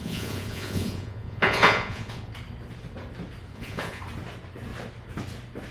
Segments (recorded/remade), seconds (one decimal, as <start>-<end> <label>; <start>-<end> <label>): 0.0-2.3 remade; 2.3-3.5 recorded; 3.5-4.0 remade; 4.0-5.7 recorded